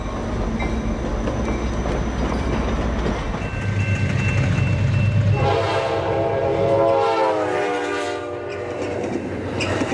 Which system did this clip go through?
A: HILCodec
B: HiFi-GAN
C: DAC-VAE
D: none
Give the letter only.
D